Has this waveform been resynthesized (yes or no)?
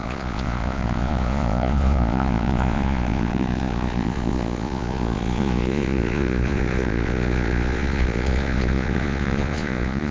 yes